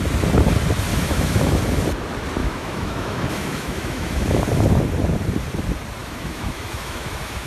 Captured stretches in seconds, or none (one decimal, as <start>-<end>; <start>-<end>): 0.0-0.9; 1.6-2.4; 4.4-6.0

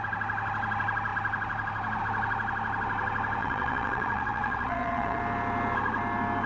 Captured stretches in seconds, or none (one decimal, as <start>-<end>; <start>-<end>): 0.0-3.4; 5.2-6.5

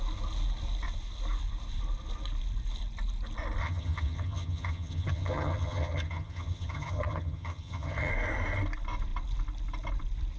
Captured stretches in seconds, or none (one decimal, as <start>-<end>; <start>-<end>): 0.0-3.6; 8.1-10.4

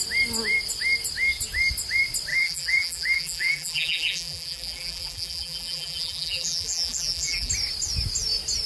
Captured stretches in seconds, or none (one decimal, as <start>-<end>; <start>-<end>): 0.0-2.3; 7.5-8.7

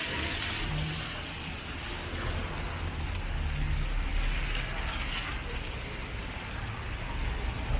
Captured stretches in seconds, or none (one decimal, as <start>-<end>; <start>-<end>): 0.0-7.8

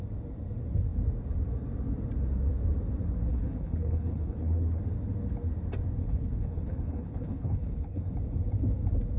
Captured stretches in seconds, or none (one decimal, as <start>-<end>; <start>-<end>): 0.0-3.3; 4.8-6.0; 8.0-9.2

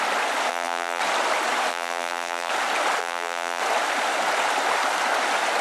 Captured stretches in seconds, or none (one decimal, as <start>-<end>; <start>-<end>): 0.0-0.5; 1.0-1.7; 2.5-3.0; 3.6-5.6

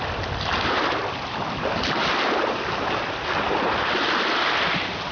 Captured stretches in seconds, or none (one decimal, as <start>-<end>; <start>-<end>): 0.0-5.1